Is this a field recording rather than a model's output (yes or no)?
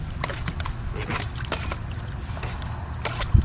yes